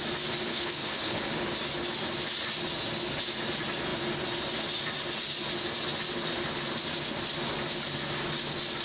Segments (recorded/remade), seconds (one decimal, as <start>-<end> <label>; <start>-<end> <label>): 0.0-0.5 recorded; 0.5-1.2 remade; 1.2-8.8 recorded

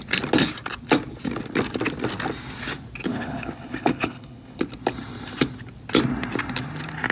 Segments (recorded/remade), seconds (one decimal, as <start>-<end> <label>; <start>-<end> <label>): 0.0-3.1 recorded; 3.1-4.6 remade; 4.6-7.1 recorded

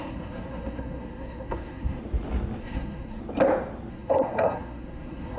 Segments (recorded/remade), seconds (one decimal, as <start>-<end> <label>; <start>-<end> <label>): 0.0-2.0 remade; 2.0-2.6 recorded; 2.6-3.2 remade; 3.2-3.9 recorded; 3.9-5.4 remade

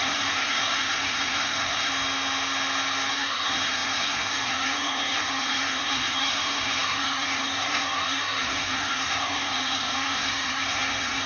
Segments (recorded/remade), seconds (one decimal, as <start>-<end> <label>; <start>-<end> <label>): 0.0-1.9 remade; 1.9-3.1 recorded; 3.1-11.3 remade